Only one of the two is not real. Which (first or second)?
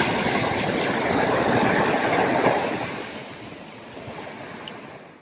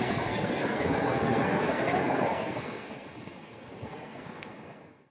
second